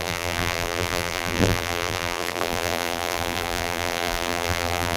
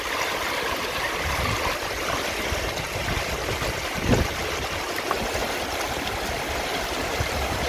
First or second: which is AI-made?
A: first